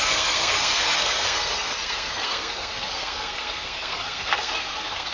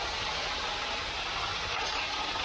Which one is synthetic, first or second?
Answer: first